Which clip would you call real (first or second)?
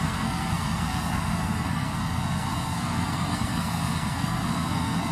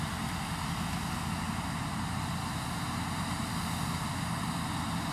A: second